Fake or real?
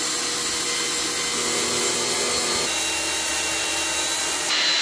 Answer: real